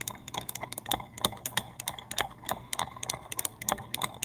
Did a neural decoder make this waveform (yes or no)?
yes